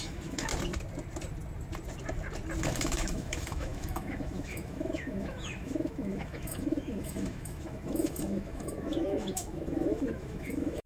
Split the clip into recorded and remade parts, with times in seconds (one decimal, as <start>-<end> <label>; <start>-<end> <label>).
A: 0.0-0.5 remade; 0.5-2.6 recorded; 2.6-10.9 remade

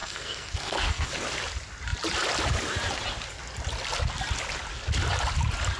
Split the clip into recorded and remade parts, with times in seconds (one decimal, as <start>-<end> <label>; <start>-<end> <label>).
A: 0.0-1.1 remade; 1.1-5.8 recorded

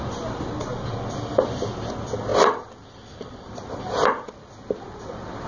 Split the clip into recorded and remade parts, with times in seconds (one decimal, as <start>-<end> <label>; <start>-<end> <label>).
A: 0.0-0.7 recorded; 0.7-1.4 remade; 1.4-2.3 recorded; 2.3-4.3 remade; 4.3-5.5 recorded

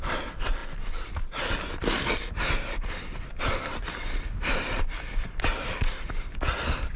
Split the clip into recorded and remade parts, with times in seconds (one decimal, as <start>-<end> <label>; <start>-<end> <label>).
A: 0.0-3.3 recorded; 3.3-7.0 remade

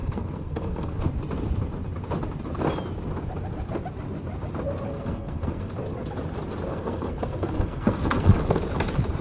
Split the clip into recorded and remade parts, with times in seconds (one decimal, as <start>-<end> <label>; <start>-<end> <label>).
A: 0.0-1.0 remade; 1.0-4.9 recorded; 4.9-5.7 remade; 5.7-6.7 recorded; 6.7-8.6 remade; 8.6-9.2 recorded

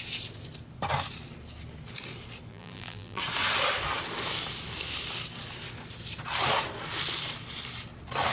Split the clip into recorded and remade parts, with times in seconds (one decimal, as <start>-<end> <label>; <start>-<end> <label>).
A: 0.0-2.5 recorded; 2.5-3.2 remade; 3.2-8.3 recorded